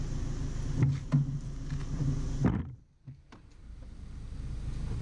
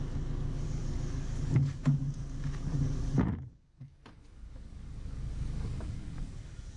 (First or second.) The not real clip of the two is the second